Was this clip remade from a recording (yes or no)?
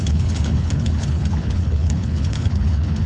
yes